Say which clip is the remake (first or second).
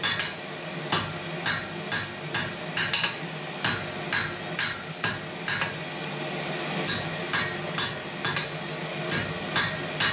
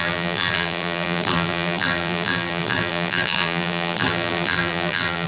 second